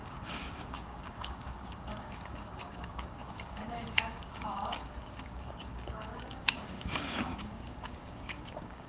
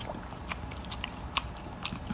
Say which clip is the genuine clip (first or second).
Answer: second